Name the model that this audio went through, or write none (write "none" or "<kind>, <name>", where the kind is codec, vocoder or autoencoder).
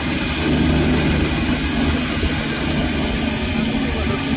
none